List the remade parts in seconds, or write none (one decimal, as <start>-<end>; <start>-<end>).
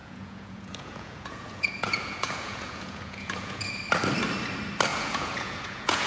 0.0-3.7; 4.9-6.1